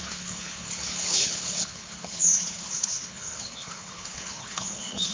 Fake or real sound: fake